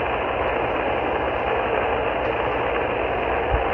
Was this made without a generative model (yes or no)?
yes